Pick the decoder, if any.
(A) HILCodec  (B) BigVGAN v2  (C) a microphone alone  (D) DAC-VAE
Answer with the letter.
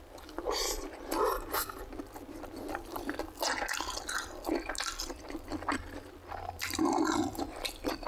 C